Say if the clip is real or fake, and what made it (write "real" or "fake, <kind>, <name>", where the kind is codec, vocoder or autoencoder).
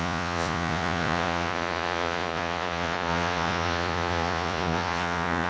fake, vocoder, Vocos